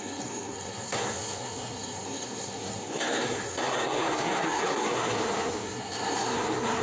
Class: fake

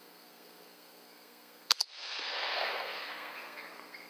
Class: fake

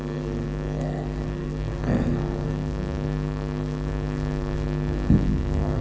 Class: fake